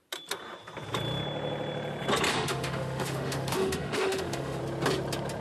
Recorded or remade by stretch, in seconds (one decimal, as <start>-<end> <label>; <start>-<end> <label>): 0.0-2.3 recorded; 2.3-4.6 remade; 4.6-5.4 recorded